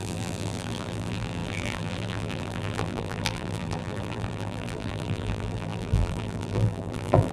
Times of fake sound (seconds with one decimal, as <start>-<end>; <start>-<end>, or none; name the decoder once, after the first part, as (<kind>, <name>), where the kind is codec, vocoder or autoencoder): 0.0-7.3 (vocoder, BigVGAN v2)